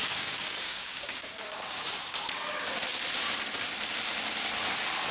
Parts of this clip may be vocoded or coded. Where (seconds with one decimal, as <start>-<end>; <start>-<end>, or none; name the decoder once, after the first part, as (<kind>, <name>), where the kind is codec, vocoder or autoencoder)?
0.0-1.9 (codec, DAC)

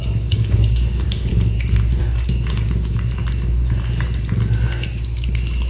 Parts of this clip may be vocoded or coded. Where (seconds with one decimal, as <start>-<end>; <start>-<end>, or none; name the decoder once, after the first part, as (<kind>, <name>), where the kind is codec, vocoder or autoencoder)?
0.0-1.3 (codec, DAC); 2.0-3.2